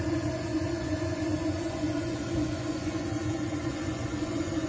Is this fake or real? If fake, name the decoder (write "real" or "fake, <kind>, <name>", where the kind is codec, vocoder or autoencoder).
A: fake, vocoder, Vocos